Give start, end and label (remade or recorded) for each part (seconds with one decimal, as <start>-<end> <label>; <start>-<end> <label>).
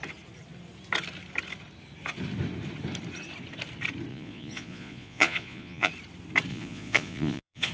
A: 0.0-4.1 recorded; 4.1-5.9 remade; 5.9-6.5 recorded; 6.5-7.7 remade